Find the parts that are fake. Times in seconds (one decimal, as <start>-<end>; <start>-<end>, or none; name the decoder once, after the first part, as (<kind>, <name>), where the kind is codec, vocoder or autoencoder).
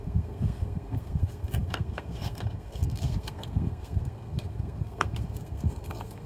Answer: 0.0-6.3 (codec, SNAC)